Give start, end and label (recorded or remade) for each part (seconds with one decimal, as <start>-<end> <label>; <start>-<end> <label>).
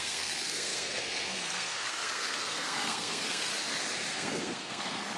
0.0-3.5 remade; 3.5-4.1 recorded; 4.1-5.2 remade